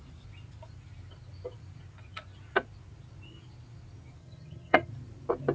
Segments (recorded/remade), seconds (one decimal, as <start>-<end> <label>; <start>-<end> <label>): 0.0-4.2 recorded; 4.2-4.9 remade; 4.9-5.5 recorded